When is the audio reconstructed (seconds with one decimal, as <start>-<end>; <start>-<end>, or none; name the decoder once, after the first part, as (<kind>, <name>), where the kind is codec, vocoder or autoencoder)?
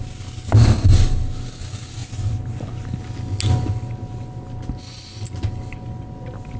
none